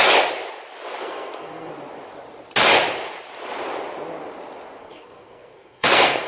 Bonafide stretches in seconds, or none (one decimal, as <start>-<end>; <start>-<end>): 0.0-1.0; 1.7-4.8